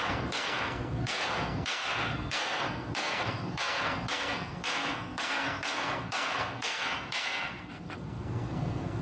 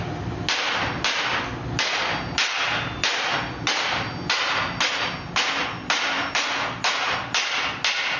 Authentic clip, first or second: second